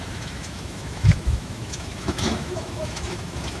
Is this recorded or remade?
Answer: remade